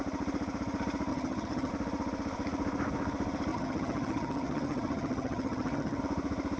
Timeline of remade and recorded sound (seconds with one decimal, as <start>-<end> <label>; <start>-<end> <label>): 0.0-1.1 recorded; 1.1-1.7 remade; 1.7-3.5 recorded; 3.5-6.0 remade; 6.0-6.6 recorded